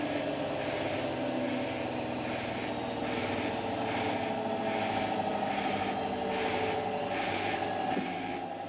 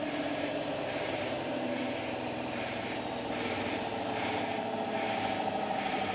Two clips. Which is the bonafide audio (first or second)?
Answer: first